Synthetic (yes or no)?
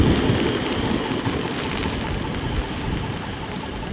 no